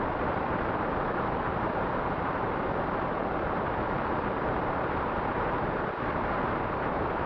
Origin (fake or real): fake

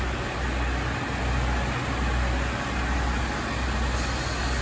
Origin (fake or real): real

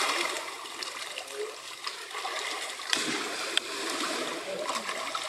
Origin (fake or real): real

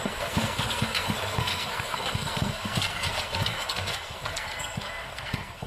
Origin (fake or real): fake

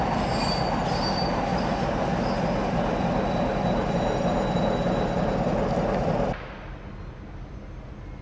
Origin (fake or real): real